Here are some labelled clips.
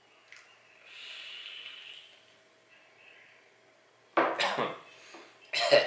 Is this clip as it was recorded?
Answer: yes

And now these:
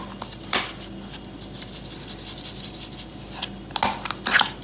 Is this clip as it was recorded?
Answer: yes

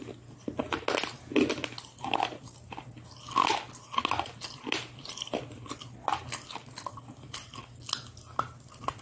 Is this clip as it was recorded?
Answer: yes